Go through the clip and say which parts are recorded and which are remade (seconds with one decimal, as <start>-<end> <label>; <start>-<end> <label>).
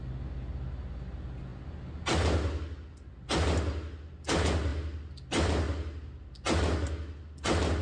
0.0-7.8 recorded